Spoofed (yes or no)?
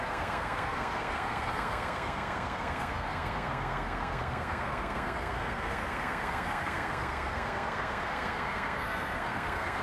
yes